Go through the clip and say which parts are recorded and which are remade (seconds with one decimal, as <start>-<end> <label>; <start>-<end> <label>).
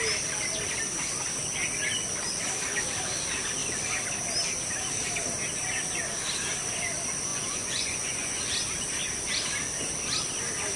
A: 0.0-7.3 recorded; 7.3-8.4 remade; 8.4-10.8 recorded